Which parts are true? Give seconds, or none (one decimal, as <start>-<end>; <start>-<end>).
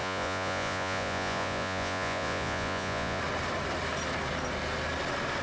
3.2-5.4